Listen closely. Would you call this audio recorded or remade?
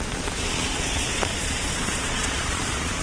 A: remade